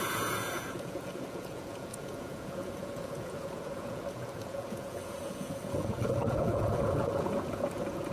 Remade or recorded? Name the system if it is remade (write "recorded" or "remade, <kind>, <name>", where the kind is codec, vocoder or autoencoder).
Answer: remade, vocoder, Vocos